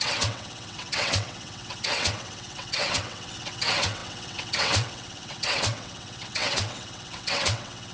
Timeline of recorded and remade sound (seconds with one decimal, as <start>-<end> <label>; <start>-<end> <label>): 0.0-7.9 remade